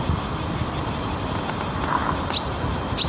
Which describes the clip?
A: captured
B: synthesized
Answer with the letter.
A